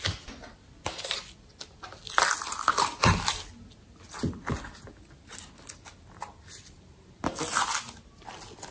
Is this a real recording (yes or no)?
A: yes